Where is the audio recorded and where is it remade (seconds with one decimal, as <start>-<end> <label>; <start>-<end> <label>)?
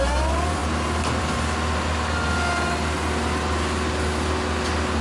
0.0-5.0 recorded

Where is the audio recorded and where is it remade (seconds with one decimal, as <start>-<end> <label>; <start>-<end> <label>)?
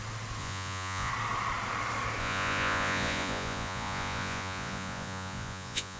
0.0-0.4 recorded; 0.4-1.1 remade; 1.1-2.2 recorded; 2.2-6.0 remade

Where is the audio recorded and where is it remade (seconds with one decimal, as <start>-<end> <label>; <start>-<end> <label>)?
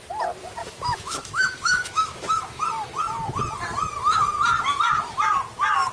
0.0-0.6 recorded; 0.6-2.6 remade; 2.6-5.9 recorded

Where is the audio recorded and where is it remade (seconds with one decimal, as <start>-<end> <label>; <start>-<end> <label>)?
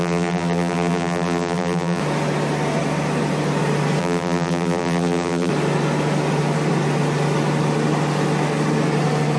0.0-2.0 remade; 2.0-4.0 recorded; 4.0-5.5 remade; 5.5-9.4 recorded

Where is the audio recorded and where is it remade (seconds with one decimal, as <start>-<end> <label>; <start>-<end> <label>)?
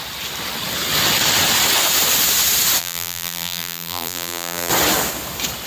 0.0-2.8 recorded; 2.8-4.7 remade; 4.7-5.7 recorded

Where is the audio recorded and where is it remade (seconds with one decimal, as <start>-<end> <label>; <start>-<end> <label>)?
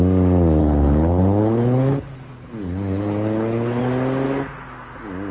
0.0-0.6 recorded; 0.6-3.8 remade; 3.8-5.3 recorded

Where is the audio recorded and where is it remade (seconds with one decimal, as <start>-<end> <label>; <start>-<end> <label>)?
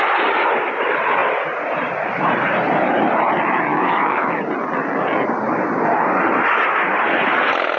0.0-3.7 recorded; 3.7-4.4 remade; 4.4-7.8 recorded